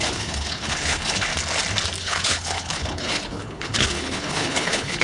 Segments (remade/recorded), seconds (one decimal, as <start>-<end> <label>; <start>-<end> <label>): 0.0-1.3 remade; 1.3-2.0 recorded; 2.0-5.0 remade